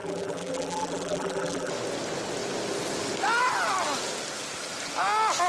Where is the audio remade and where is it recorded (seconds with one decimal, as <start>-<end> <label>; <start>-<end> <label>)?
0.0-1.7 remade; 1.7-5.5 recorded

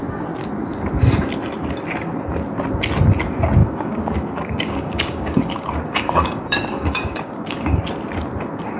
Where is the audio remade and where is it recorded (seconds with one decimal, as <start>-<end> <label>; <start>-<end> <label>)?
0.0-3.6 recorded; 3.6-7.8 remade; 7.8-8.8 recorded

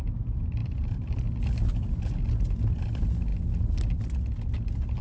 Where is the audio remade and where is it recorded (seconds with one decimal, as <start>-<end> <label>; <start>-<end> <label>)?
0.0-0.6 recorded; 0.6-1.2 remade; 1.2-5.0 recorded

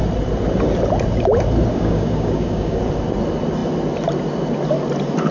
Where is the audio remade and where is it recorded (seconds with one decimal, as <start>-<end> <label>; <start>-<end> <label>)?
0.0-1.7 recorded; 1.7-2.8 remade; 2.8-5.3 recorded

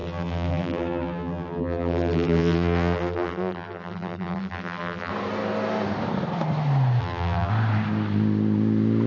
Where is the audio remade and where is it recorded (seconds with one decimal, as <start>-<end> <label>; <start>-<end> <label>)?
0.0-5.1 remade; 5.1-7.0 recorded; 7.0-7.5 remade; 7.5-9.1 recorded

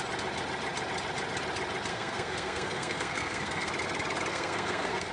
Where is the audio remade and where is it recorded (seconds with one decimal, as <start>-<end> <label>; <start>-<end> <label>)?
0.0-1.9 recorded; 1.9-3.7 remade; 3.7-4.3 recorded; 4.3-5.1 remade

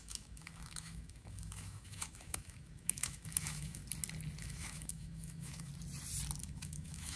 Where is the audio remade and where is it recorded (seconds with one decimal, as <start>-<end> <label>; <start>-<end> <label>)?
0.0-3.8 remade; 3.8-4.4 recorded; 4.4-5.7 remade; 5.7-6.4 recorded; 6.4-7.2 remade

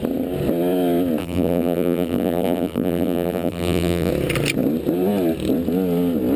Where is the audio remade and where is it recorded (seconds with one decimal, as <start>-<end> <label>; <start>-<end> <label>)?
0.0-1.2 recorded; 1.2-4.1 remade; 4.1-6.4 recorded